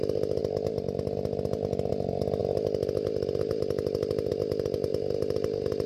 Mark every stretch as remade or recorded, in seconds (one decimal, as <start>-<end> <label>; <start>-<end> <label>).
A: 0.0-5.9 recorded

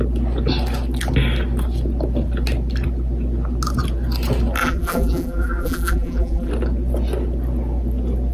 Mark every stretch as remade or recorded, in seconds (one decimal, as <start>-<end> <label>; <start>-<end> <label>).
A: 0.0-4.6 recorded; 4.6-6.5 remade; 6.5-8.3 recorded

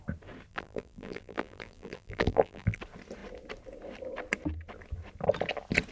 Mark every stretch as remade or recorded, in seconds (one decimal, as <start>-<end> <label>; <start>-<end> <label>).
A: 0.0-0.5 recorded; 0.5-2.8 remade; 2.8-5.9 recorded

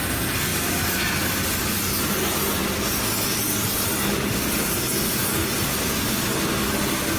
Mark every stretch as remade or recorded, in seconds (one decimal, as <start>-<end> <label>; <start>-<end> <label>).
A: 0.0-7.2 recorded

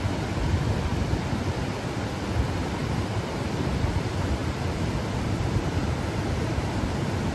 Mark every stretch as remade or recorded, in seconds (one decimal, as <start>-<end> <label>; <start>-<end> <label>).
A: 0.0-0.9 recorded; 0.9-1.7 remade; 1.7-2.8 recorded; 2.8-3.7 remade; 3.7-4.4 recorded; 4.4-6.8 remade; 6.8-7.3 recorded